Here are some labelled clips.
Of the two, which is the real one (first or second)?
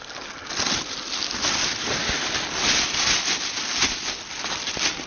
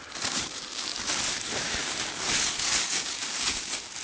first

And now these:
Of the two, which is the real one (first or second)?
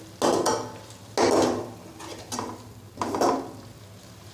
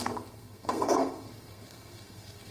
first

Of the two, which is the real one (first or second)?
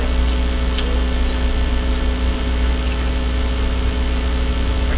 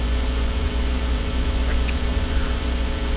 first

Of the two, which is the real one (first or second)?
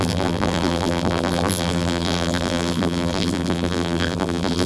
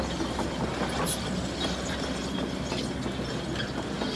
second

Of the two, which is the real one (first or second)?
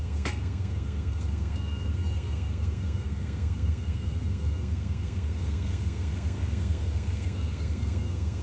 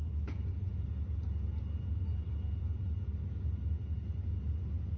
second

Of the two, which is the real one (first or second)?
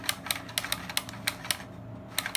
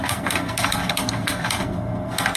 first